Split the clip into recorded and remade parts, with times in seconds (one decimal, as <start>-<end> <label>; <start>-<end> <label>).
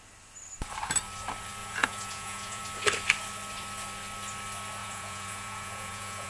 0.0-1.6 recorded; 1.6-2.6 remade; 2.6-4.8 recorded; 4.8-6.3 remade